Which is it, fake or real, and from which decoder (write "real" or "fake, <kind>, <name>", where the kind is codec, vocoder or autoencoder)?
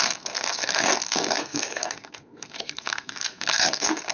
fake, codec, SNAC